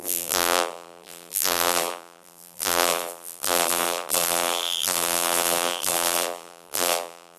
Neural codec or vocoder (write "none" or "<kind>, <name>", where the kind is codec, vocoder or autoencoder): vocoder, BigVGAN v2